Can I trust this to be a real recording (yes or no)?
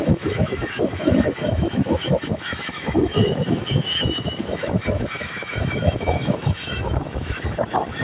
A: no